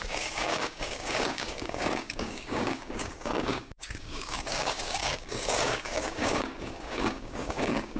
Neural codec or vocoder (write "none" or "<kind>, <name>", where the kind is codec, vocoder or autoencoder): codec, DAC